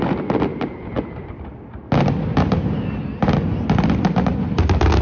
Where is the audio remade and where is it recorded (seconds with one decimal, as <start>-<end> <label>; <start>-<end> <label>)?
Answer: 0.0-5.0 recorded